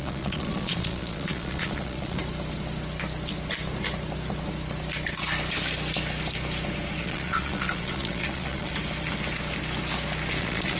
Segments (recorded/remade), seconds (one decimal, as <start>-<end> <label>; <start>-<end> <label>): 0.0-2.2 remade; 2.2-7.0 recorded; 7.0-8.7 remade; 8.7-10.4 recorded; 10.4-10.8 remade